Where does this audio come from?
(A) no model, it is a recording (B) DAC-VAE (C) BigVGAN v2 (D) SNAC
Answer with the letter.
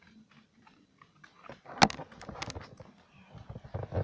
A